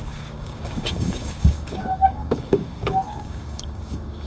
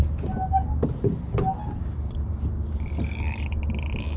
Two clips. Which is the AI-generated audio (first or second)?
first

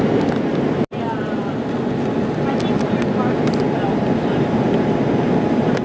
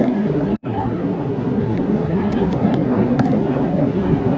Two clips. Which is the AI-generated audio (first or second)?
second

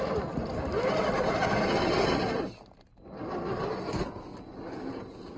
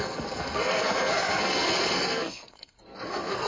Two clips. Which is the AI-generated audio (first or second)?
second